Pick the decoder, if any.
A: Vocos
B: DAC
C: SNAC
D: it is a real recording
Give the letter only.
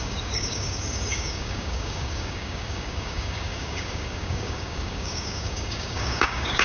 B